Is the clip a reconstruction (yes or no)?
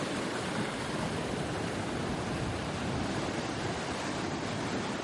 no